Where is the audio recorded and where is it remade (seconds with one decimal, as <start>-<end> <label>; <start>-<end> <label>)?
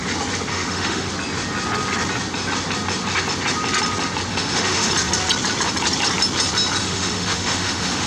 0.0-0.5 recorded; 0.5-1.1 remade; 1.1-4.3 recorded; 4.3-4.9 remade; 4.9-6.8 recorded; 6.8-8.1 remade